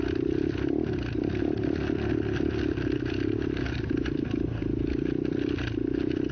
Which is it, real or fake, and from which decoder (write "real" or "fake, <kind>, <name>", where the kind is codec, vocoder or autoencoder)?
real